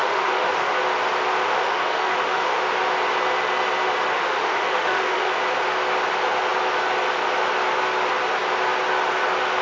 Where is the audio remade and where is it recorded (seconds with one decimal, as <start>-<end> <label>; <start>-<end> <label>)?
0.0-0.7 remade; 0.7-1.4 recorded; 1.4-2.6 remade; 2.6-4.1 recorded; 4.1-5.3 remade; 5.3-9.6 recorded